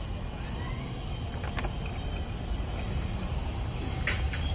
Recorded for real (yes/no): yes